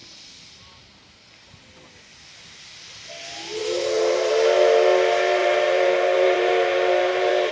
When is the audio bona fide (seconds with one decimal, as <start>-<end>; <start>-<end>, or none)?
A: 0.0-3.6; 4.3-5.4